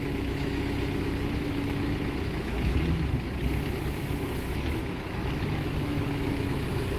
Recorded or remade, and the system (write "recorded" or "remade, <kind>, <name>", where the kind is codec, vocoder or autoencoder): remade, autoencoder, DAC-VAE